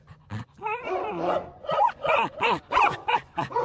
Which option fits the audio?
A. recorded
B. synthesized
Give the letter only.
B